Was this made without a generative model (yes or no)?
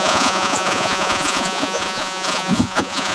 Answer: no